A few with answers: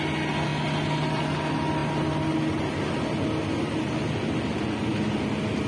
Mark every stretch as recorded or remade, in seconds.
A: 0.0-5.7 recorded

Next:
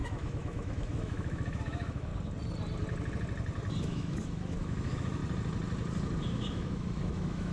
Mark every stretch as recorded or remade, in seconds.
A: 0.0-2.1 remade; 2.1-3.8 recorded; 3.8-5.2 remade; 5.2-6.2 recorded; 6.2-7.5 remade

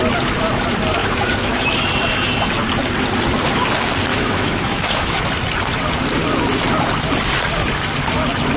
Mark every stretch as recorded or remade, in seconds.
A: 0.0-1.0 recorded; 1.0-1.8 remade; 1.8-4.1 recorded; 4.1-5.2 remade; 5.2-8.6 recorded

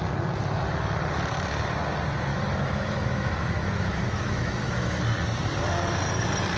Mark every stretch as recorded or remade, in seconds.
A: 0.0-2.3 recorded; 2.3-5.0 remade; 5.0-6.6 recorded

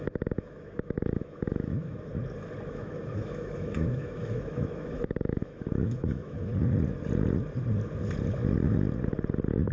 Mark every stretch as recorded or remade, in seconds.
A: 0.0-2.1 remade; 2.1-2.7 recorded; 2.7-6.5 remade; 6.5-9.7 recorded

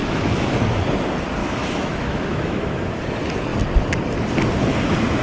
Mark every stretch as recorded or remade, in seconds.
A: 0.0-0.5 remade; 0.5-1.4 recorded; 1.4-3.0 remade; 3.0-5.2 recorded